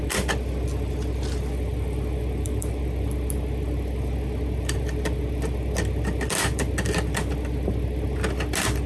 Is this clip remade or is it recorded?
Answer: recorded